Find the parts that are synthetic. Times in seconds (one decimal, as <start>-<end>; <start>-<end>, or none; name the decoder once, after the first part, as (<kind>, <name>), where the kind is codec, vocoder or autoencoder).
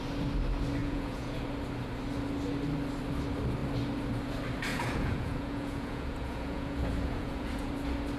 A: 0.8-1.4 (vocoder, Vocos); 4.7-7.7